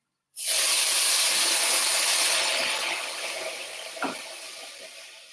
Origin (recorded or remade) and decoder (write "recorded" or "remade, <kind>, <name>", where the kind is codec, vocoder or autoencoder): remade, vocoder, BigVGAN v2